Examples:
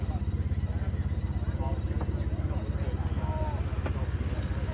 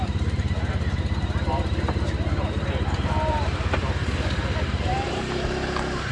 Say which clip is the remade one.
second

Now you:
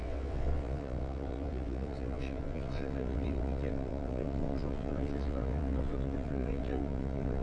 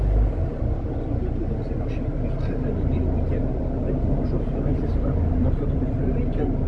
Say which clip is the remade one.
first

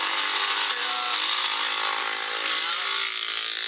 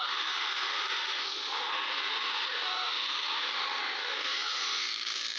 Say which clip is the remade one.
second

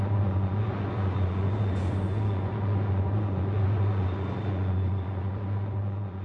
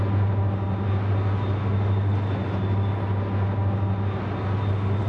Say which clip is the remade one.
first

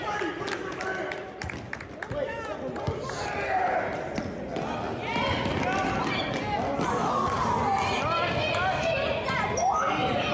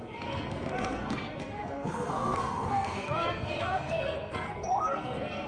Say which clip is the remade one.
second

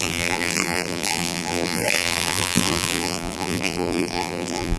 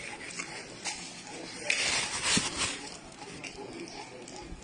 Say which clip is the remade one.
first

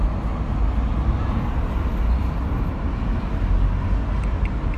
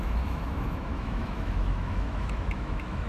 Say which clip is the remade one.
second